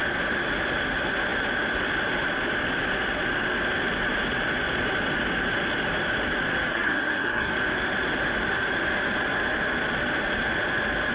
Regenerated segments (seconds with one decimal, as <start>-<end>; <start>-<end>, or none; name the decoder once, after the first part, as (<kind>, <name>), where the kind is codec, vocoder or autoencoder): 6.7-7.5 (codec, SNAC)